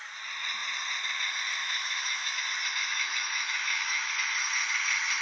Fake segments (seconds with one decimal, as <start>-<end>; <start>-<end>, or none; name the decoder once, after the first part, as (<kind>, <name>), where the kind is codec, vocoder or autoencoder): 1.6-2.4 (autoencoder, DAC-VAE); 2.8-4.1